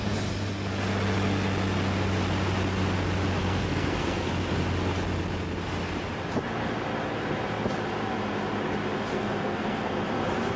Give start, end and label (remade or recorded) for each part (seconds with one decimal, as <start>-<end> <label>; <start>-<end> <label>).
0.0-3.4 recorded; 3.4-4.3 remade; 4.3-9.1 recorded; 9.1-9.9 remade; 9.9-10.6 recorded